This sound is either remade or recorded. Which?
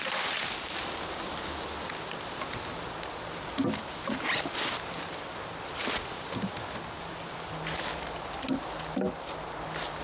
recorded